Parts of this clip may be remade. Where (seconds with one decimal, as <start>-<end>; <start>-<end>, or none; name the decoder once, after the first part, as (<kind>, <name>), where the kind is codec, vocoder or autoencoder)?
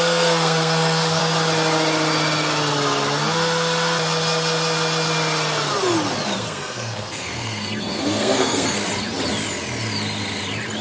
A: 0.0-1.2 (codec, SNAC); 6.4-8.8